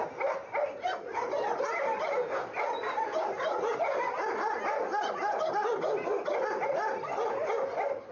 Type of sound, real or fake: real